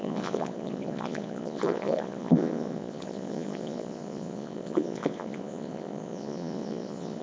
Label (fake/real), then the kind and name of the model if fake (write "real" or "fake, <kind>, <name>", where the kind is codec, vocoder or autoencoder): fake, vocoder, Vocos